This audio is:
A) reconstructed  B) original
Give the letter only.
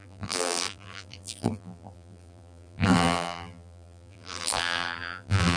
A